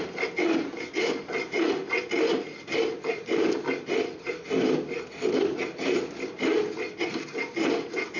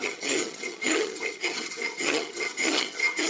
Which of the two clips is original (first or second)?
first